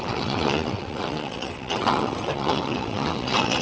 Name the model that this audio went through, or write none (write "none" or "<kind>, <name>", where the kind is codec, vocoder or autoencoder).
vocoder, WaveNeXt